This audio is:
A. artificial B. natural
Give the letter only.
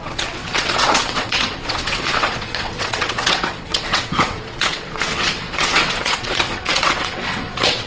A